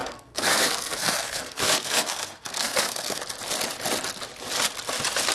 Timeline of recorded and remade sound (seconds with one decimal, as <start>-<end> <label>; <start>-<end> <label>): 0.0-3.2 remade; 3.2-5.3 recorded